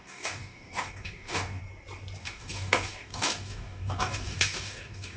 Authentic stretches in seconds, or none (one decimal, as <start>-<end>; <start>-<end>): 1.6-2.2